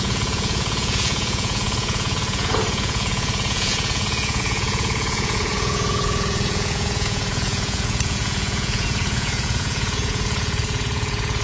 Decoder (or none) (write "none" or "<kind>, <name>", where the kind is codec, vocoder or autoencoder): vocoder, Vocos